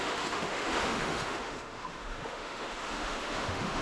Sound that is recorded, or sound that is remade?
remade